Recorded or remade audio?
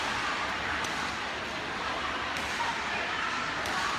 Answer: recorded